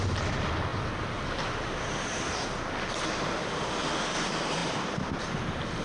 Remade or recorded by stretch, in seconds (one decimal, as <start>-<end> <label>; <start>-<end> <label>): 0.0-4.6 recorded; 4.6-5.2 remade; 5.2-5.8 recorded